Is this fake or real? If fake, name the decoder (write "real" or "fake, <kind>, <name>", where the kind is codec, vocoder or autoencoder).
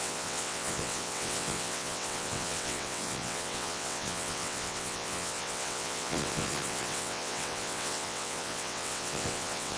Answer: fake, vocoder, WaveNeXt